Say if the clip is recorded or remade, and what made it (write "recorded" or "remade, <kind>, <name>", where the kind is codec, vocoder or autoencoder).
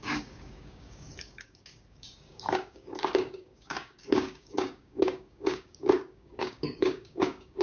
remade, codec, DAC